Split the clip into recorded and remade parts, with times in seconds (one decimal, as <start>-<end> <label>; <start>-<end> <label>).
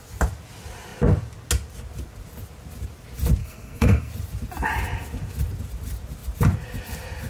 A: 0.0-3.4 recorded; 3.4-4.1 remade; 4.1-7.3 recorded